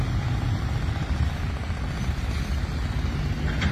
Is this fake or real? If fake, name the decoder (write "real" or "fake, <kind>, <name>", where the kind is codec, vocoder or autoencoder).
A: real